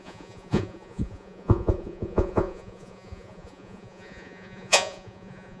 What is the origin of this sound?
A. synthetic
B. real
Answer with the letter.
A